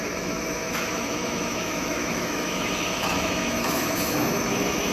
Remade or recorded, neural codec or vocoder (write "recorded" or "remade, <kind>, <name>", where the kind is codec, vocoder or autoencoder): remade, autoencoder, DAC-VAE